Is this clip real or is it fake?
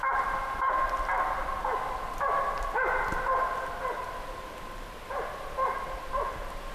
real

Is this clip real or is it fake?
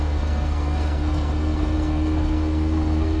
fake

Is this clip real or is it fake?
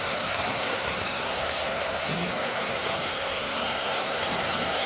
fake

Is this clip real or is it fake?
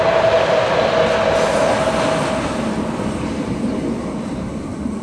real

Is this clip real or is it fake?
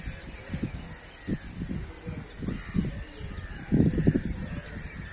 real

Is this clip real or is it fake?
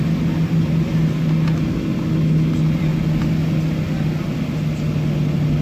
real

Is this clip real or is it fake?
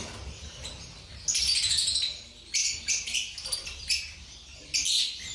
real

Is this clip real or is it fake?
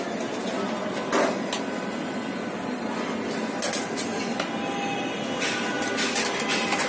real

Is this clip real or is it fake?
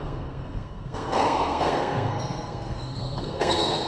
fake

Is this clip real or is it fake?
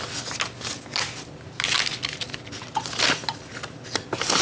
real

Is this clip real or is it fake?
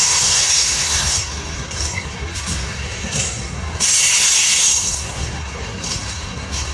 fake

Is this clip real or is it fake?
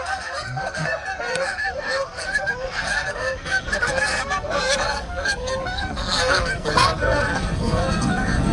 fake